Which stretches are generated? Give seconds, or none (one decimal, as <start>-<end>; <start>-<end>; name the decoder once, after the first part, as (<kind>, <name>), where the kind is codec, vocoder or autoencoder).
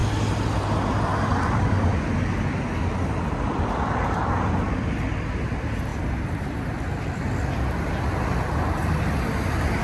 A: none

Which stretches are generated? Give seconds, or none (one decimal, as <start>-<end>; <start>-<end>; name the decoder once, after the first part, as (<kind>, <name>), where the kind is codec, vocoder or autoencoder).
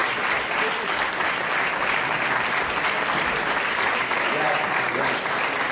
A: none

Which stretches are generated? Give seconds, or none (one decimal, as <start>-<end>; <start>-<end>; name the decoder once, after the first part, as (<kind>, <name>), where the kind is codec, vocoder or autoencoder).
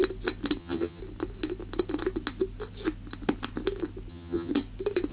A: 0.6-1.0 (vocoder, HiFi-GAN); 4.1-4.5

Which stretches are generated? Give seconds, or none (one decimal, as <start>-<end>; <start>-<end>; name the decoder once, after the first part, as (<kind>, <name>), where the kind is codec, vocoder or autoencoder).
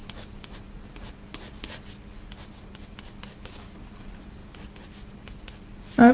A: none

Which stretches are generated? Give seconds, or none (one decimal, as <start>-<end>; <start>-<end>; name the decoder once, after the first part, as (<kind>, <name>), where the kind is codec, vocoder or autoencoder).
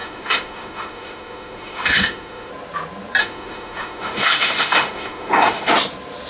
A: 0.0-2.5 (autoencoder, DAC-VAE); 3.2-5.7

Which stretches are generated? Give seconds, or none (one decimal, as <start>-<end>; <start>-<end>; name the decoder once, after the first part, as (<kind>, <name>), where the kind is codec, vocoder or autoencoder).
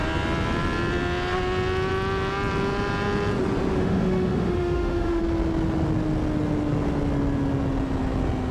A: 3.7-5.2 (autoencoder, DAC-VAE)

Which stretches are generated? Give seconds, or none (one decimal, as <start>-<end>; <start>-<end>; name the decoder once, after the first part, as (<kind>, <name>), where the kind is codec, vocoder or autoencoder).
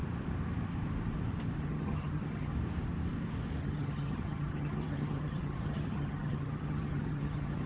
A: 1.6-2.5 (vocoder, HiFi-GAN); 3.6-7.7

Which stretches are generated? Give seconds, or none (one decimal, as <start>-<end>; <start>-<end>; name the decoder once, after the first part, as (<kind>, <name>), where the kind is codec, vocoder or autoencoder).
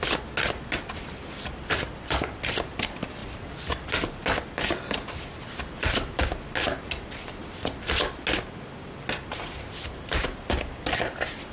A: none